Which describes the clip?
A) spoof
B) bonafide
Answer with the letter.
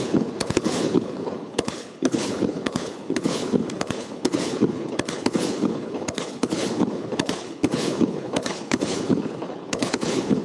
A